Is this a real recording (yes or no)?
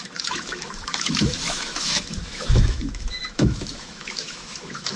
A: no